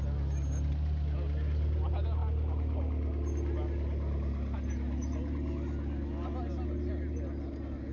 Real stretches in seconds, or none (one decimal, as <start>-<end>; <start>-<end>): 0.0-7.9